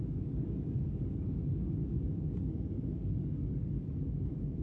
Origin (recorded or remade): remade